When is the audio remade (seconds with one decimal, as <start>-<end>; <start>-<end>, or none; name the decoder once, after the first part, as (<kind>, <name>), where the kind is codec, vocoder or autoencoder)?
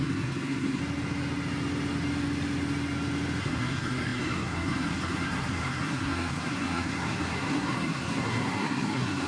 0.0-0.8 (codec, SNAC); 3.4-9.3